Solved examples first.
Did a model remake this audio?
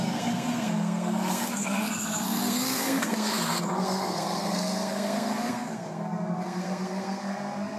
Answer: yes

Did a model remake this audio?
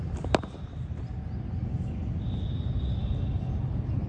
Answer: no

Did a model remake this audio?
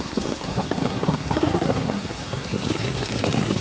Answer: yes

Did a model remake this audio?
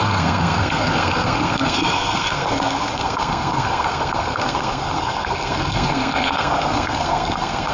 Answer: yes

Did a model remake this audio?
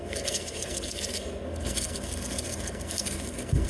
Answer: yes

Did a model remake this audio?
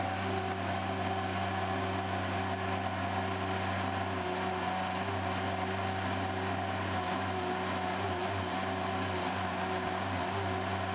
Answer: no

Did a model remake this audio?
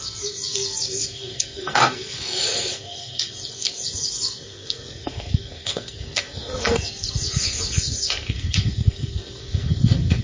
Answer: yes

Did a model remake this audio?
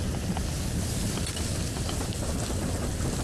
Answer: no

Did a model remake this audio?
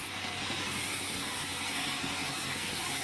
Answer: yes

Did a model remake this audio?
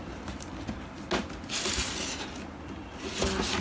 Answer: no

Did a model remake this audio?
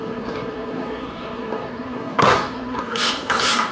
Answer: yes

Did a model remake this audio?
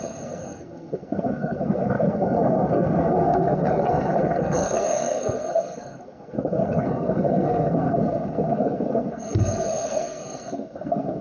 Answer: yes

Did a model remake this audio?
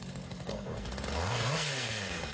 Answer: yes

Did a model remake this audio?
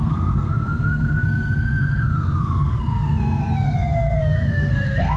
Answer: yes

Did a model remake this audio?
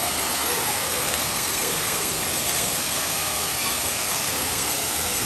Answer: yes